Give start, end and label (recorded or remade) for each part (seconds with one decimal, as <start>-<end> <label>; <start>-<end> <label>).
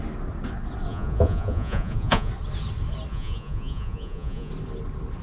0.0-0.9 recorded; 0.9-2.3 remade; 2.3-3.1 recorded; 3.1-4.5 remade; 4.5-5.2 recorded